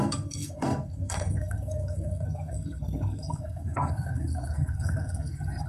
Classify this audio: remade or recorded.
remade